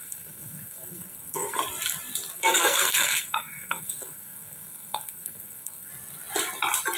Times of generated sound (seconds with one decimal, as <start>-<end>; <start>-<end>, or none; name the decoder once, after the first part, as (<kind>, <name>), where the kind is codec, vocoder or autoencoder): 0.0-1.6 (codec, SNAC); 2.3-5.9